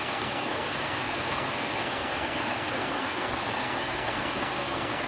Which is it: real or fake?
fake